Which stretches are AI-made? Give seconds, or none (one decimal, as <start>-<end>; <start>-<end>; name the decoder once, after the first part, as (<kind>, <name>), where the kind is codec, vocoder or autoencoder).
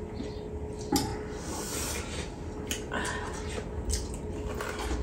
none